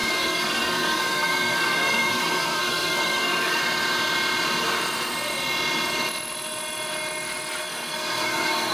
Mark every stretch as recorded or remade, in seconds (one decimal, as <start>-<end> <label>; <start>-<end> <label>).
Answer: 0.0-3.6 remade; 3.6-7.6 recorded; 7.6-8.7 remade